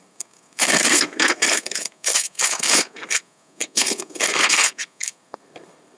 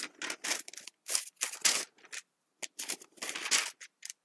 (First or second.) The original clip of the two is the second